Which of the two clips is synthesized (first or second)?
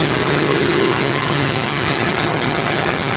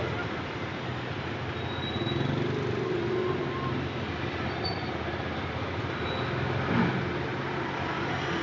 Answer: first